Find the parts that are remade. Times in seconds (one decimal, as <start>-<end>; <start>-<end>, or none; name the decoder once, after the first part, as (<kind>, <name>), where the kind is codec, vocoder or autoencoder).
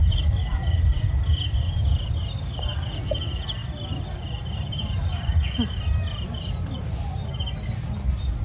none